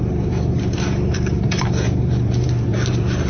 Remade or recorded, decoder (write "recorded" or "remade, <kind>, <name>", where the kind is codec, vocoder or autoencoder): remade, vocoder, BigVGAN v2